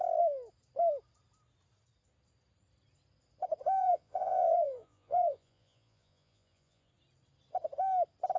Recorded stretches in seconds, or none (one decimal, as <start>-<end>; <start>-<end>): 0.0-3.8; 6.9-8.4